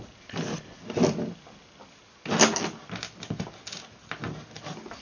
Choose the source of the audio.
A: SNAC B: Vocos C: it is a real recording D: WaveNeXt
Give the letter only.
C